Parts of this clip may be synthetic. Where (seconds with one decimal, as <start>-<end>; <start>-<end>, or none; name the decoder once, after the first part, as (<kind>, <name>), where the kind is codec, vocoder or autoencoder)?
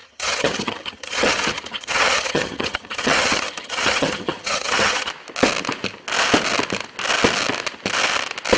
0.0-5.1 (vocoder, HiFi-GAN)